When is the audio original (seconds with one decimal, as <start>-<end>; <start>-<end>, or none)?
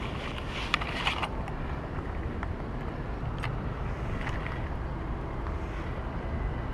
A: 0.0-6.7